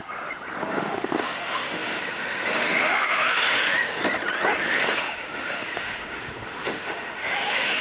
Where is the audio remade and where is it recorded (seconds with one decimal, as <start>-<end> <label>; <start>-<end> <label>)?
0.0-0.7 recorded; 0.7-4.0 remade; 4.0-4.6 recorded; 4.6-7.8 remade